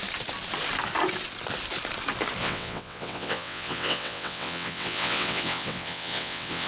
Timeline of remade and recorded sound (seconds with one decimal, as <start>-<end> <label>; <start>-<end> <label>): 0.0-2.4 recorded; 2.4-6.7 remade